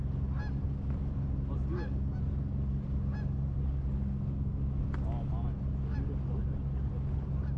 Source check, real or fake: real